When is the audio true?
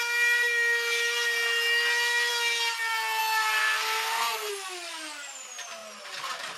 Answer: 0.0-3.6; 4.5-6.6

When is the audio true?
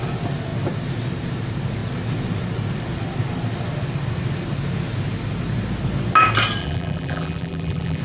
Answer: 0.0-6.6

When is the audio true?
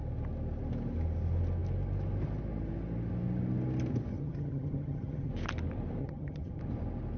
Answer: 0.0-4.1; 5.3-6.0; 6.6-7.2